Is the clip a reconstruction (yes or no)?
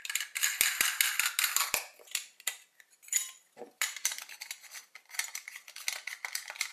no